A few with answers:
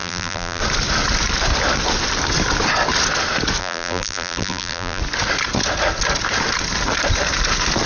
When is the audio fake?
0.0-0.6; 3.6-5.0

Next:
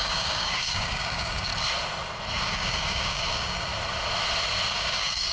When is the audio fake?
0.0-1.5; 2.4-3.7; 4.7-5.3